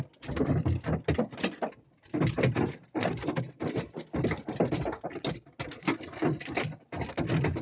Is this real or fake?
real